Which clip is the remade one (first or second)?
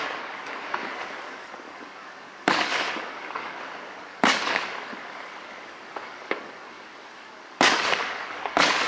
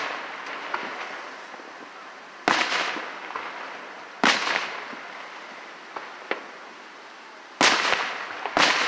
first